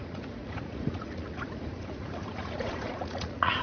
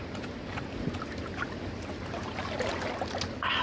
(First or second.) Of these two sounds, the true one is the second